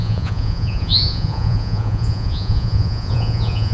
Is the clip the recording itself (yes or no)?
no